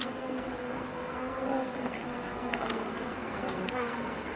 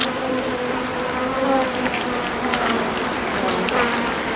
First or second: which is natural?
second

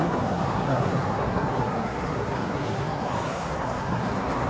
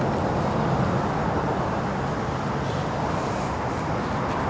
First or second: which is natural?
second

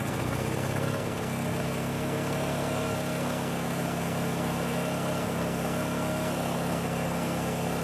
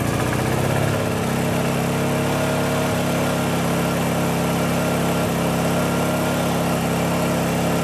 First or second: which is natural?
second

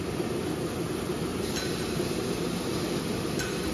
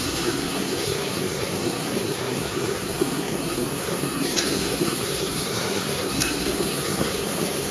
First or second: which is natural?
first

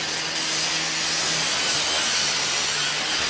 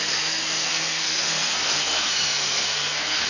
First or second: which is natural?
first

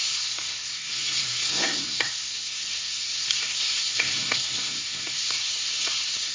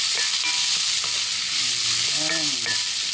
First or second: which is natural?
second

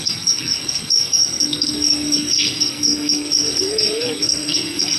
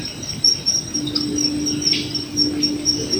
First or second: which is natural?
second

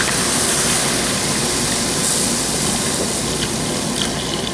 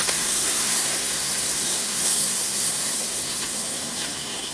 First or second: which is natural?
first